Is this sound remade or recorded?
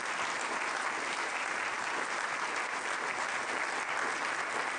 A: recorded